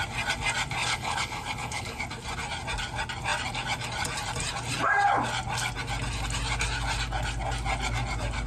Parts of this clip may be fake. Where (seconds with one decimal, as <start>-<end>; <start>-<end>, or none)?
0.8-2.0

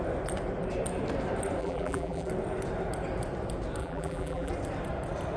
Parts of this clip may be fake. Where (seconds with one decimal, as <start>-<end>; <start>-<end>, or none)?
1.6-2.3; 3.8-4.5